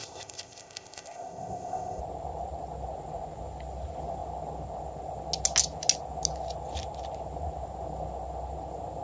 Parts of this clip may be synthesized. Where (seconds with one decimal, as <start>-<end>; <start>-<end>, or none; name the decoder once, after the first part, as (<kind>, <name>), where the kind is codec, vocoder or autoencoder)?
0.0-2.0 (codec, ZipCodec)